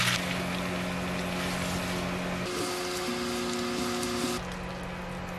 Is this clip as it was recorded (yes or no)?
yes